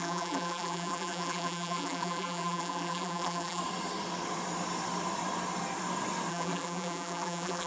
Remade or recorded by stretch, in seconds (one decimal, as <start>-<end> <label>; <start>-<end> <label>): 0.0-3.6 remade; 3.6-6.3 recorded; 6.3-7.7 remade

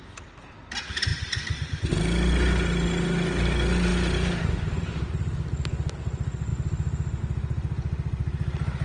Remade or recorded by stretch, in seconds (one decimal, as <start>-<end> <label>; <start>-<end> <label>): 0.0-1.1 recorded; 1.1-1.9 remade; 1.9-8.8 recorded